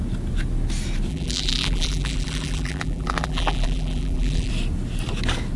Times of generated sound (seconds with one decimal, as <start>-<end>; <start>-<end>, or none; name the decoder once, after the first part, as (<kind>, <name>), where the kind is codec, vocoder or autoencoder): 1.1-4.5 (vocoder, BigVGAN v2)